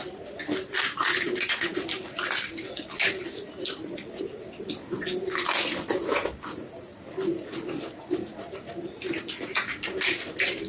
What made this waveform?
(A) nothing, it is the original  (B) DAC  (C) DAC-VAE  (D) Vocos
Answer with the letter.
A